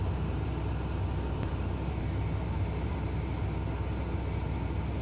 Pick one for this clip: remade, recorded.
recorded